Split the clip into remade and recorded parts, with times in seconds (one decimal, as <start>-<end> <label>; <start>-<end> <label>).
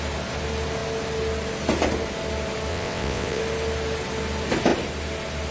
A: 0.0-2.7 recorded; 2.7-3.4 remade; 3.4-5.5 recorded